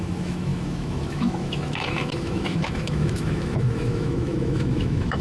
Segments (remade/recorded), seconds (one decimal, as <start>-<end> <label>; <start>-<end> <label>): 0.0-5.2 remade